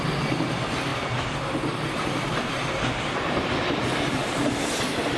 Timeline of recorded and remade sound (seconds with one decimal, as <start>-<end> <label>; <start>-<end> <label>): 0.0-5.2 recorded